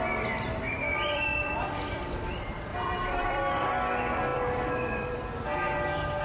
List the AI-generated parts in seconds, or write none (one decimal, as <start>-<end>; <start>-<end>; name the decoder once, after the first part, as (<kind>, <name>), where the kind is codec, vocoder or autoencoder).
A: 0.9-2.3 (vocoder, BigVGAN v2); 2.7-3.7; 4.3-5.2